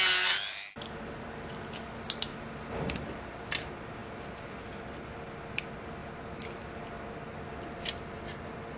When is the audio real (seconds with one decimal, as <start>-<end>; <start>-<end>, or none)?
0.0-4.0; 4.7-8.8